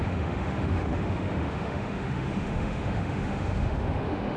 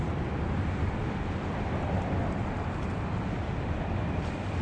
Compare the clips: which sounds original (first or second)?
second